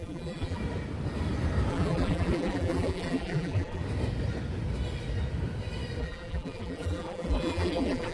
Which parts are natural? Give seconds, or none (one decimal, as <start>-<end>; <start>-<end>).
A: 0.6-1.7; 3.8-6.0